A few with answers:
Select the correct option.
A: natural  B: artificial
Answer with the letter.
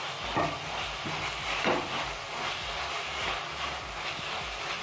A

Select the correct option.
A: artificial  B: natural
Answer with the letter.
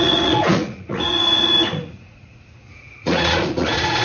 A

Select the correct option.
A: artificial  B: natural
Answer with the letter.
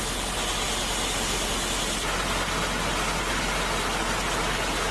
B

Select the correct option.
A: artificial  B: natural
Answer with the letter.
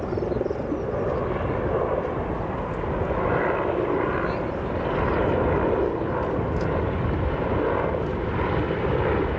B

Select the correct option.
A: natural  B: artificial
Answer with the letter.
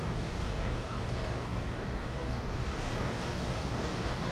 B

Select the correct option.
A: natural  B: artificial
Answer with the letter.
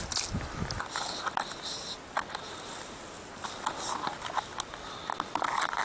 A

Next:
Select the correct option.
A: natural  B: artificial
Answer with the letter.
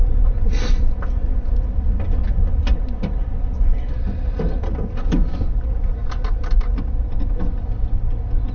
A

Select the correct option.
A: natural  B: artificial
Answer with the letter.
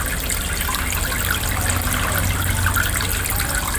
A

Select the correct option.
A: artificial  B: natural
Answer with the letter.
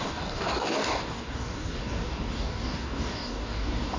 A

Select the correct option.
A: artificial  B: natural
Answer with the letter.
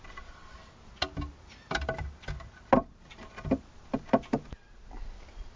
B